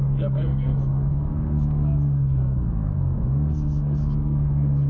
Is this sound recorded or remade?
remade